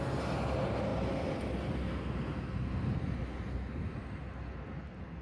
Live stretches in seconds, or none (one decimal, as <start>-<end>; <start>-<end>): 0.0-5.2